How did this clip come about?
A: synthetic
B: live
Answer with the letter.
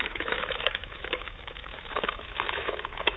A